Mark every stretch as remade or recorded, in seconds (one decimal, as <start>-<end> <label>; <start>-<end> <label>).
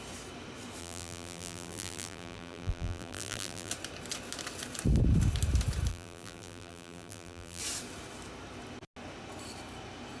0.0-0.8 recorded; 0.8-3.7 remade; 3.7-5.9 recorded; 5.9-7.6 remade; 7.6-10.2 recorded